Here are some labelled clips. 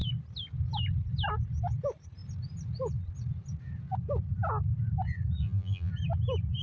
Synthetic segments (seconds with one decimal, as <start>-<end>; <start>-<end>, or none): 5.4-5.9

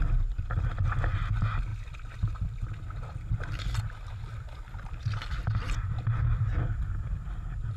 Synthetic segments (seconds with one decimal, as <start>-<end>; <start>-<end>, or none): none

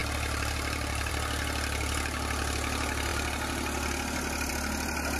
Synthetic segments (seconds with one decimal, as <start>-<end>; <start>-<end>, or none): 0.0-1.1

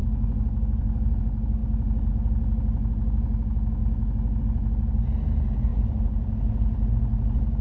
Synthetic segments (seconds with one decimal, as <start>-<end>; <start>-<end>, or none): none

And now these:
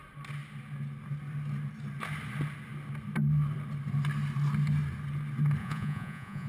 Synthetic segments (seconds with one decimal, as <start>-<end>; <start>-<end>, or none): 5.6-6.5

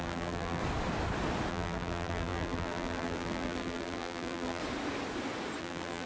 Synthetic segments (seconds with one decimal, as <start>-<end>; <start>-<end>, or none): 0.0-0.6; 1.5-4.6; 5.6-6.1

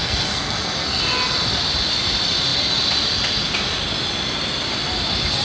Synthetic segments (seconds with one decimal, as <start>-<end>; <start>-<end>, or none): 0.0-1.0

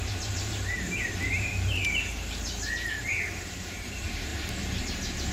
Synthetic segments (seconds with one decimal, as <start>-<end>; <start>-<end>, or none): 0.0-1.8; 3.3-4.3; 4.8-5.3